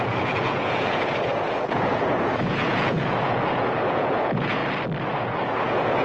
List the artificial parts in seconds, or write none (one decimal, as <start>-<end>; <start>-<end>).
0.0-4.6; 5.1-6.0